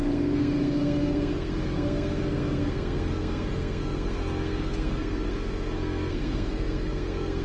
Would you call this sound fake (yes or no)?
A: yes